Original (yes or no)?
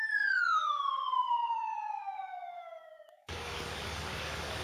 no